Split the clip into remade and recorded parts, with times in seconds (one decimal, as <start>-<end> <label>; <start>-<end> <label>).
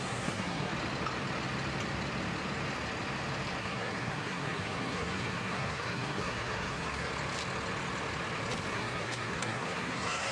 0.0-0.7 remade; 0.7-3.6 recorded; 3.6-7.1 remade; 7.1-8.7 recorded; 8.7-10.3 remade